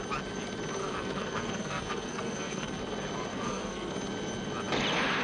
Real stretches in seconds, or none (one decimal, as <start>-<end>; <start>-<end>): 0.0-0.8; 2.8-3.3; 3.9-5.2